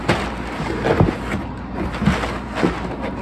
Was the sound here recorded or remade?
recorded